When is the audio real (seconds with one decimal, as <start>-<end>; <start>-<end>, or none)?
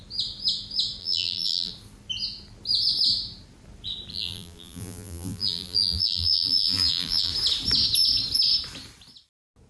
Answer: 0.0-1.0; 1.7-4.1; 7.3-9.7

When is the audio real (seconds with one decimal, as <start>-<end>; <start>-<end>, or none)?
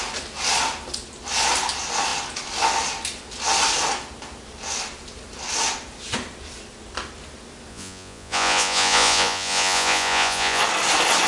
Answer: 0.0-7.7; 10.6-11.3